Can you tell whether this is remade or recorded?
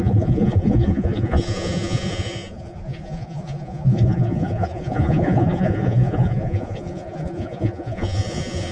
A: remade